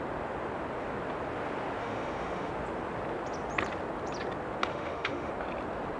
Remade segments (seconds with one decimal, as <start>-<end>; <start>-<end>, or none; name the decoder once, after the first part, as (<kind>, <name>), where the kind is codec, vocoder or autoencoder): 1.8-2.5 (autoencoder, DAC-VAE); 4.7-5.3